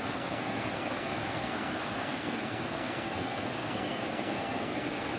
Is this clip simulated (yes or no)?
yes